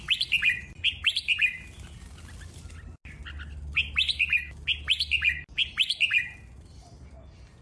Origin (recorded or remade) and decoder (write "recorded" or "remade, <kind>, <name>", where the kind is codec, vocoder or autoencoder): recorded